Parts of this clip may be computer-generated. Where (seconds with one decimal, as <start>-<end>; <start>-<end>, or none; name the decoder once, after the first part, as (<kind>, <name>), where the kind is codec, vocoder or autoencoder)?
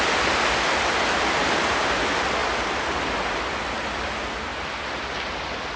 none